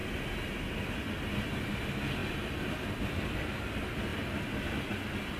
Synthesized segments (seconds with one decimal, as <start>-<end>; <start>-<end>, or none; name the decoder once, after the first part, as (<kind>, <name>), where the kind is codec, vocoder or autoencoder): 2.2-3.6 (vocoder, BigVGAN v2)